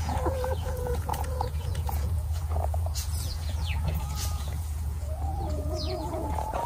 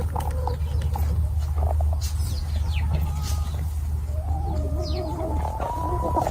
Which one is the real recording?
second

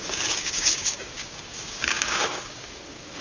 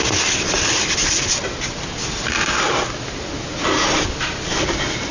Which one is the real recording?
second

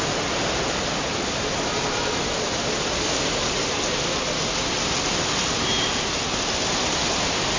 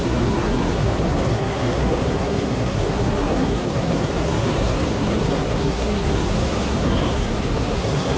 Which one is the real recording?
first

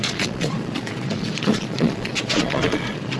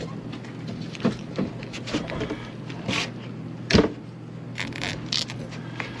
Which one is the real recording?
second